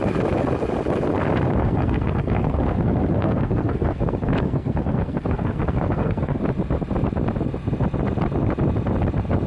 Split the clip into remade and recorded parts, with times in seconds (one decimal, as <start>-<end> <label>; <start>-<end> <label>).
0.0-1.6 recorded; 1.6-6.4 remade; 6.4-9.5 recorded